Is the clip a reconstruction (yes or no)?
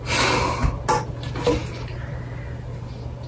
no